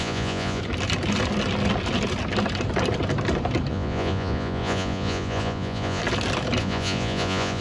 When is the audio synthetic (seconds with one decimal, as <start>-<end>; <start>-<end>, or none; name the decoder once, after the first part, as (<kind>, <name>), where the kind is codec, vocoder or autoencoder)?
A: 0.0-0.6 (vocoder, Vocos); 3.7-6.0; 6.6-7.6